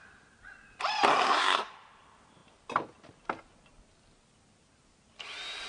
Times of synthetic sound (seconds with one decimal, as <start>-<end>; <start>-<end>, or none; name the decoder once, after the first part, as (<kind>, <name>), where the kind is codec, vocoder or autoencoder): 1.1-1.7 (codec, SNAC)

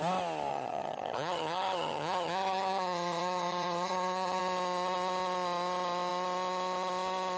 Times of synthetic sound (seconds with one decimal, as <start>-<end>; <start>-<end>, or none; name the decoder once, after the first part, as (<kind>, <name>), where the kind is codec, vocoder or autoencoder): 0.5-4.4 (vocoder, HiFi-GAN)